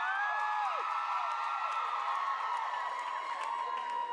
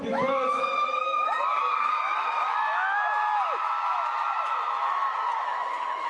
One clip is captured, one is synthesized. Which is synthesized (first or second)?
second